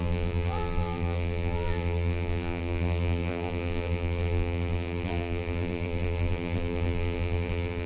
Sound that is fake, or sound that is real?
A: fake